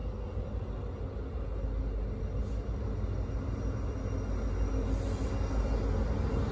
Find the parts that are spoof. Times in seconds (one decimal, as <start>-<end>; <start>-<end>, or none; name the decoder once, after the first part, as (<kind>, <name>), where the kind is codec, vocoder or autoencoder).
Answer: none